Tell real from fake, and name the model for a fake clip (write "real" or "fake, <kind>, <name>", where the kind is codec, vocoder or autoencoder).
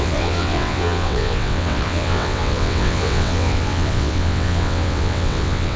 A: fake, vocoder, WaveNeXt